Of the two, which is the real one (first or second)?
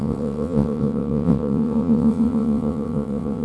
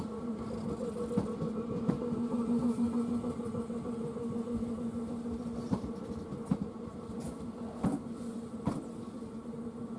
second